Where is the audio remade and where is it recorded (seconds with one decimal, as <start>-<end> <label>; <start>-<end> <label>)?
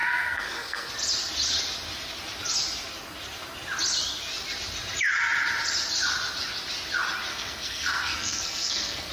0.0-0.9 remade; 0.9-7.3 recorded; 7.3-9.1 remade